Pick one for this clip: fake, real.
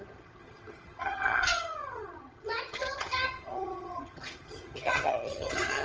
fake